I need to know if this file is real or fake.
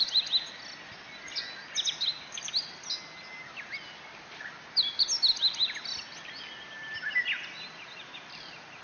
real